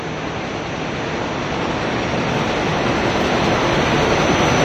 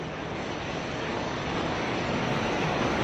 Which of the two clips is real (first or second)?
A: first